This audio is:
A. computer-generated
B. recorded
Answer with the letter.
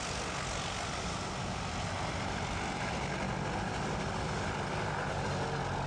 B